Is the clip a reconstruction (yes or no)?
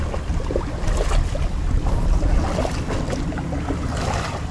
no